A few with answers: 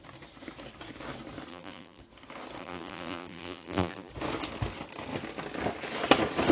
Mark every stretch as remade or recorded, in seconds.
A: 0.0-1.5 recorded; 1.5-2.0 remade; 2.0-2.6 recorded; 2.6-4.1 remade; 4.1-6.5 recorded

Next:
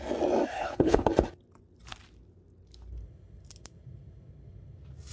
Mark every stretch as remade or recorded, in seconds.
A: 0.0-0.5 recorded; 0.5-1.1 remade; 1.1-5.1 recorded

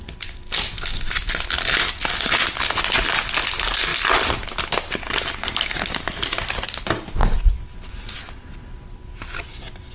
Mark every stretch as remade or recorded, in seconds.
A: 0.0-9.9 recorded

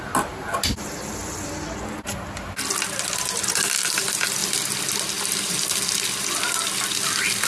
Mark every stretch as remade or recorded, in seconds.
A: 0.0-7.5 recorded

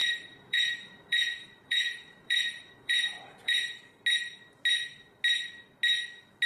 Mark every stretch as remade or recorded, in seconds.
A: 0.0-3.9 remade; 3.9-6.5 recorded

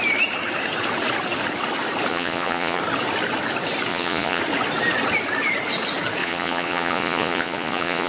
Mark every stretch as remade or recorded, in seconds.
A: 0.0-2.1 recorded; 2.1-2.8 remade; 2.8-3.9 recorded; 3.9-4.4 remade; 4.4-6.2 recorded; 6.2-8.1 remade